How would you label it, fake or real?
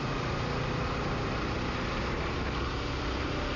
real